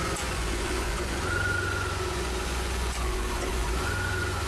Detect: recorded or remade remade